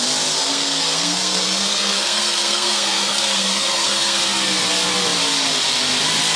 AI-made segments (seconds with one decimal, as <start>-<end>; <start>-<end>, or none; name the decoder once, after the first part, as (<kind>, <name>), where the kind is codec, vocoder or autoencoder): 0.4-4.2 (codec, SNAC)